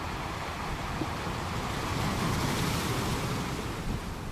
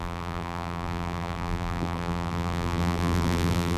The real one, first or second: first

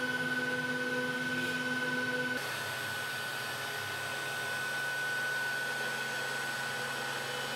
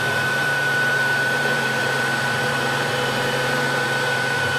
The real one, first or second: first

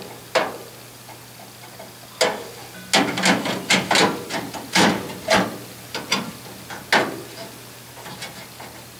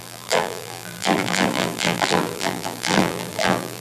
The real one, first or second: first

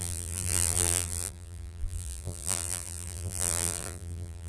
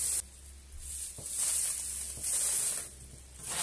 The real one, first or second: second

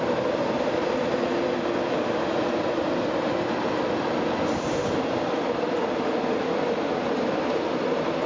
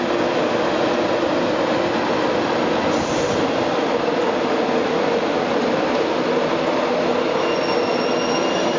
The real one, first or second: second